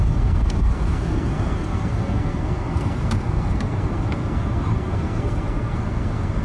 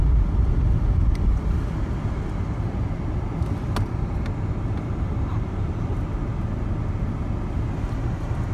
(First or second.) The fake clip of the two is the first